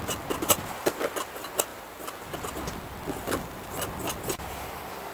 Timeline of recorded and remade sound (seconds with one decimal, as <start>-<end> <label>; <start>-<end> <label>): 0.0-5.1 recorded